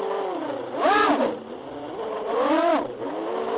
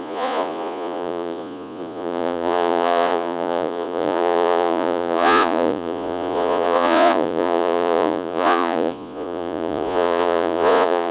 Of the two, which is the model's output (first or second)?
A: second